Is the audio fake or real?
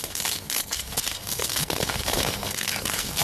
fake